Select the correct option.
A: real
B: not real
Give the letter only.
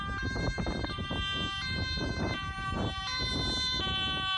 A